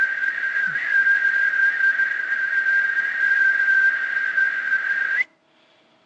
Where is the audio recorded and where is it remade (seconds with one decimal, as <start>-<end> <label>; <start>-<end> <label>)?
0.0-1.6 remade; 1.6-3.2 recorded; 3.2-4.7 remade; 4.7-6.1 recorded